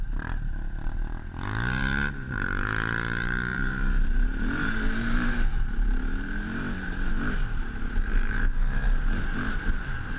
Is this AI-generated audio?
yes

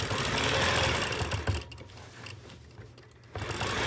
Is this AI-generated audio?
no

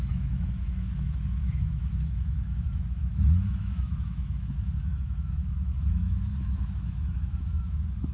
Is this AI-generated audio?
yes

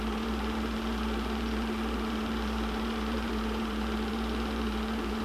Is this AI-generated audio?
yes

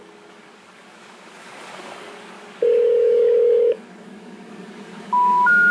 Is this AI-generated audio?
yes